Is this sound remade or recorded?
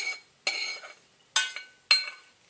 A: recorded